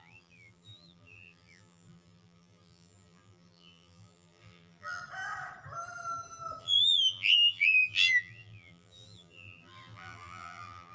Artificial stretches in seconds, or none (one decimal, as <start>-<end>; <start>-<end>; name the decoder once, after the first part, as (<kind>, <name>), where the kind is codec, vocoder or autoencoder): 0.0-5.0 (vocoder, BigVGAN v2); 6.6-10.9

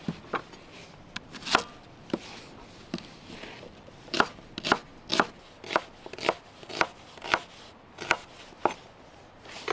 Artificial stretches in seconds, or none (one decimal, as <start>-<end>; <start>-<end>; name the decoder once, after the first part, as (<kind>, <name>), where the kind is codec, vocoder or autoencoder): 3.7-4.5 (vocoder, BigVGAN v2)

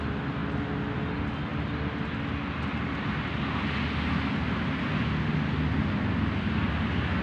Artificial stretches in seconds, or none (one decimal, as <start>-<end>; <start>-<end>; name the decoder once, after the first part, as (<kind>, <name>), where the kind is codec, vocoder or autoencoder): none

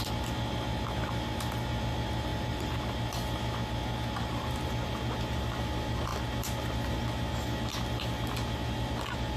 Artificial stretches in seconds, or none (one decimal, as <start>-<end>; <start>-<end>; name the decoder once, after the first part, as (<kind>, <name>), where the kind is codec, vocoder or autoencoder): 2.3-2.8 (vocoder, BigVGAN v2); 4.2-5.4